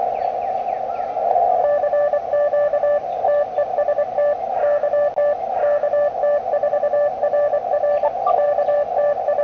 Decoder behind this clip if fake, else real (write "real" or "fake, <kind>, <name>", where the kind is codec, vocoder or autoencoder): real